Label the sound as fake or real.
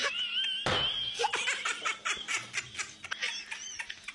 real